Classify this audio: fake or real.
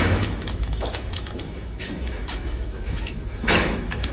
fake